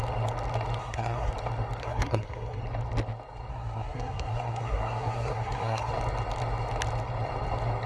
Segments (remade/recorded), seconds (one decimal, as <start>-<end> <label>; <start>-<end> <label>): 0.0-0.8 recorded; 0.8-1.3 remade; 1.3-1.8 recorded; 1.8-2.6 remade; 2.6-3.5 recorded; 3.5-5.9 remade; 5.9-7.9 recorded